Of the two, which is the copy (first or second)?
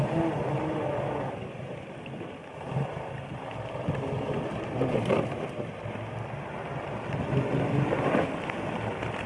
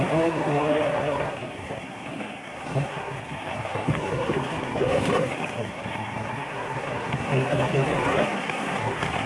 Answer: second